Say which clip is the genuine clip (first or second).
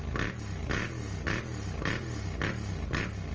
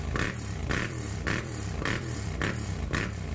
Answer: first